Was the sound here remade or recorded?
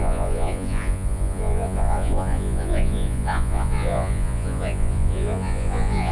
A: remade